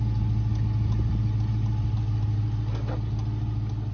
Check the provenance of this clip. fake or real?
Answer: real